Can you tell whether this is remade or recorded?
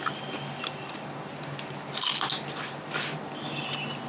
recorded